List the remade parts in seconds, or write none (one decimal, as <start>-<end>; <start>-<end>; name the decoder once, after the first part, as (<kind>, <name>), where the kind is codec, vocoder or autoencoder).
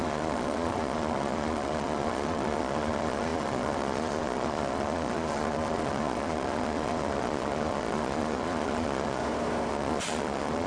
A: 0.0-9.2 (vocoder, Vocos); 9.7-10.7